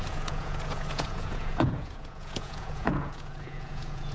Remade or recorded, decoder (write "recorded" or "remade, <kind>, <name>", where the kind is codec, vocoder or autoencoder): remade, vocoder, Vocos